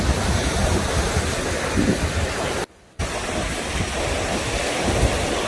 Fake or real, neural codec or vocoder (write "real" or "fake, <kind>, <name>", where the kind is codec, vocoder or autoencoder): real